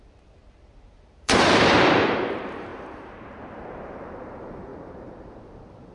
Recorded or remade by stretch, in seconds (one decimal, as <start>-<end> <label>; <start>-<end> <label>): 0.0-2.7 remade; 2.7-4.2 recorded; 4.2-5.9 remade